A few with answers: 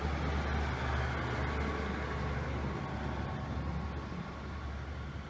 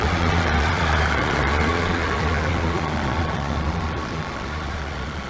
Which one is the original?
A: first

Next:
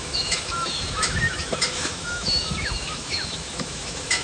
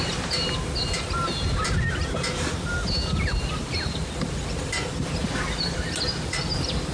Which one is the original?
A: second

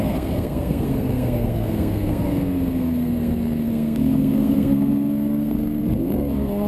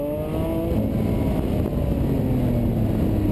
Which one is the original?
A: second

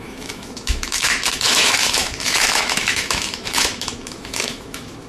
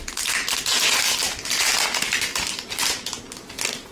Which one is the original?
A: second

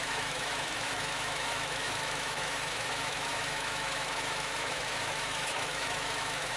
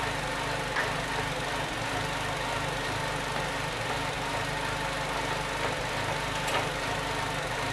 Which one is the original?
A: second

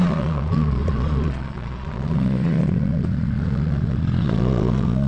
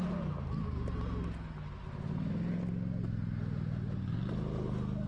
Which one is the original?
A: second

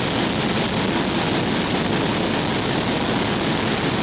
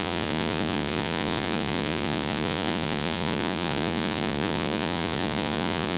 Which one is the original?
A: first